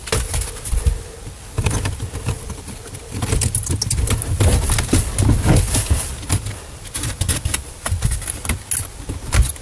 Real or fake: real